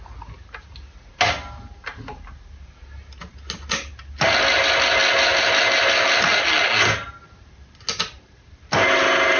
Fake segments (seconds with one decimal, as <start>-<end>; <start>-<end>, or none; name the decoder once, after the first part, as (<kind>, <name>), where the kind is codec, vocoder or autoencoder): none